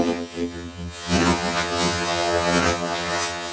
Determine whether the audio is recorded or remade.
remade